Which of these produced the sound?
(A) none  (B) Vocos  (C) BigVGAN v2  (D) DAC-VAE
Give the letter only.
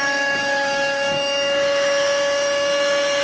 D